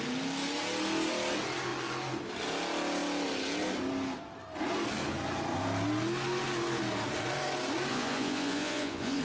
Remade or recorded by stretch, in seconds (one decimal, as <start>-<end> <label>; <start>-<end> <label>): 0.0-7.9 recorded; 7.9-9.2 remade